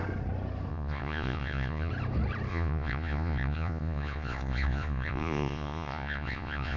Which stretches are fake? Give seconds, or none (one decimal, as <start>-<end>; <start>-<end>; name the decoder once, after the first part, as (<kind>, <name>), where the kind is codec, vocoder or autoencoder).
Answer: 0.7-1.9 (vocoder, Vocos); 2.5-6.8

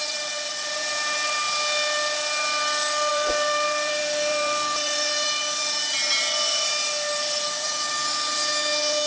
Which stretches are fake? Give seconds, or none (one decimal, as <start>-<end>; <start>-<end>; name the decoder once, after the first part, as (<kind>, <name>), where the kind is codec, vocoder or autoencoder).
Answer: 0.0-0.9 (vocoder, BigVGAN v2); 3.1-7.7

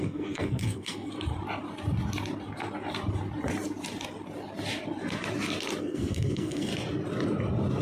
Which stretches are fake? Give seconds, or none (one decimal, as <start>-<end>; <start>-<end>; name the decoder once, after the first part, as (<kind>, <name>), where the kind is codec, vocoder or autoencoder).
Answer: 0.0-1.1 (codec, SNAC); 5.8-6.7

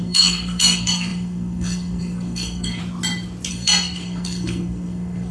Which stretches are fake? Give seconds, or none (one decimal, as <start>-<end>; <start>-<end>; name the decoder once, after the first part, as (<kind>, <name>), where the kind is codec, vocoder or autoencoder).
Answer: 0.0-2.8 (codec, SNAC); 3.5-5.3

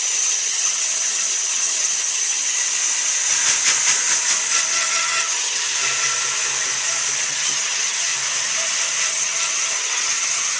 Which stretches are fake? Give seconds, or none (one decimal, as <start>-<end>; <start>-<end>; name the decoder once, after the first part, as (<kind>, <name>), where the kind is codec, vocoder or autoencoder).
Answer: 0.0-2.6 (vocoder, HiFi-GAN); 4.7-5.7; 7.3-8.1; 9.1-10.6

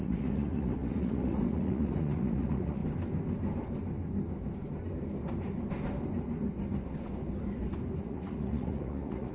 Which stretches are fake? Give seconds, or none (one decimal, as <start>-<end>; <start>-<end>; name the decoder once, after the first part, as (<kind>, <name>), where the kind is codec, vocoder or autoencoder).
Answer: 0.0-2.8 (vocoder, Vocos); 8.0-9.3

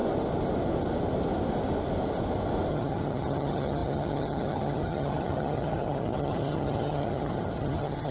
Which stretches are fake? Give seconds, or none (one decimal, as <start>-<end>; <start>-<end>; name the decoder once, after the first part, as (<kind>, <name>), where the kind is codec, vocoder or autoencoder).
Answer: 2.7-8.1 (vocoder, HiFi-GAN)